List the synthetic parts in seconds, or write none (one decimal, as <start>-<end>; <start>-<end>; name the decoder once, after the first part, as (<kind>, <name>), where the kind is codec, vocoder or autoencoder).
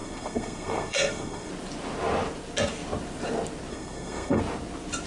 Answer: 0.0-1.5 (codec, SNAC); 3.7-4.4